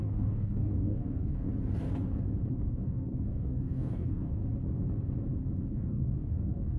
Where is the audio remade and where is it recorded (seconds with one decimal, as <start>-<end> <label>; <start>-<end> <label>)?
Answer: 0.0-1.5 remade; 1.5-2.5 recorded; 2.5-4.4 remade; 4.4-5.6 recorded; 5.6-6.8 remade